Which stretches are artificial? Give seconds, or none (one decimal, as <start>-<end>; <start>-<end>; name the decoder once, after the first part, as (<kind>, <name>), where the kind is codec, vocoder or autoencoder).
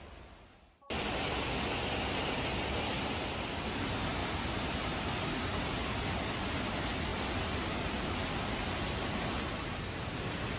none